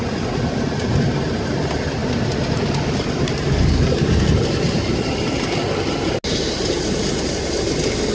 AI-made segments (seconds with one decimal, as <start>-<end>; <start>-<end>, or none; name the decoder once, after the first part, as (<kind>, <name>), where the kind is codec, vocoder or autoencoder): none